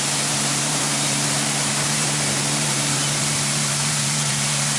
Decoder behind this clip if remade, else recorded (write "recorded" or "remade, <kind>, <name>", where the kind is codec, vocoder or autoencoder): remade, vocoder, BigVGAN v2